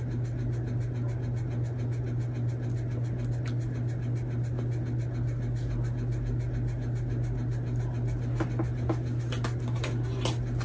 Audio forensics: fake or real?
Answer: real